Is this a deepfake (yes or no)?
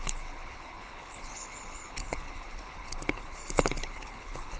yes